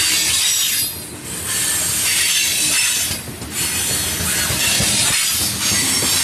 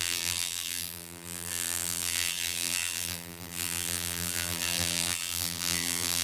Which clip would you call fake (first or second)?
second